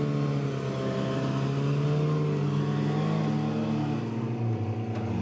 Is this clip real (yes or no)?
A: yes